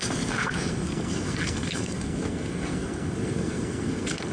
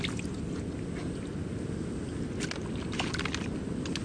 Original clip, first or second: second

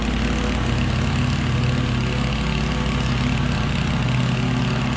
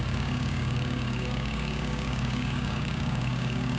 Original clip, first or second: first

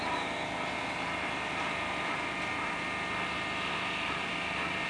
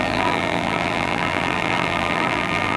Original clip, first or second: first